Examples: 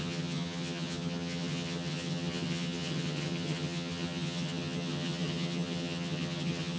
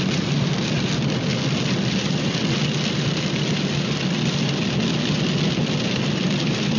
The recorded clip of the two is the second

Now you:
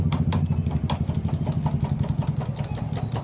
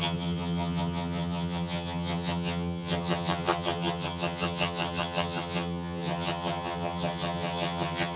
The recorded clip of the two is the first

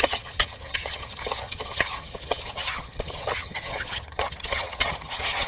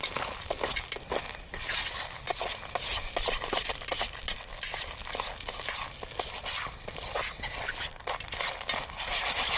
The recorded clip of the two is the second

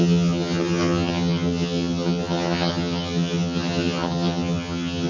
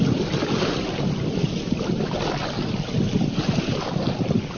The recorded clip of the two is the second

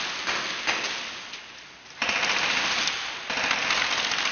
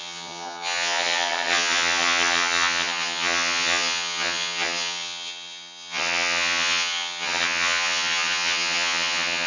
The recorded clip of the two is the first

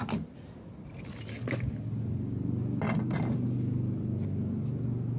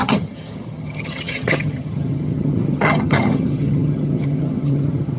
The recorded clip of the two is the first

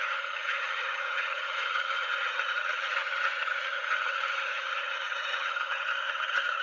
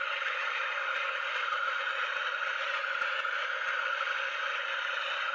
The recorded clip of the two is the second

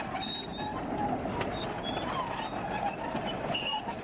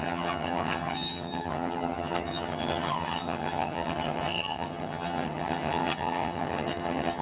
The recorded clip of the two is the first